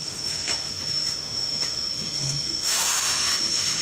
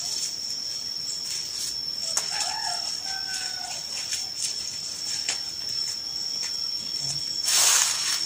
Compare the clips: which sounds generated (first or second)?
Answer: first